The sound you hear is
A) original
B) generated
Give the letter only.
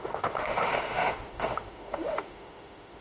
B